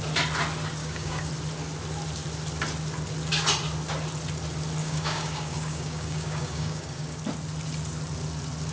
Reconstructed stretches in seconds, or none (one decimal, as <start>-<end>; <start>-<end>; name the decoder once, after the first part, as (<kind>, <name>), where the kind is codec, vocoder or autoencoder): 0.8-1.3 (codec, DAC); 4.8-7.2